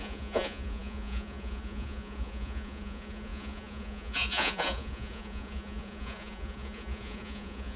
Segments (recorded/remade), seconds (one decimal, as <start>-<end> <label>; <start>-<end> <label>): 0.0-7.8 remade